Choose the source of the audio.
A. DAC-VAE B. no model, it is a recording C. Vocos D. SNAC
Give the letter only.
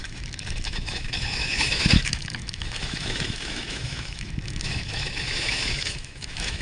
A